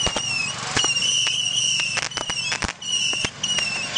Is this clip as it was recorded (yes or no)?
yes